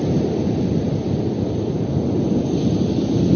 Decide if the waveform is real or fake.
real